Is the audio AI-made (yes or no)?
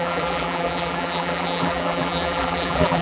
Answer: yes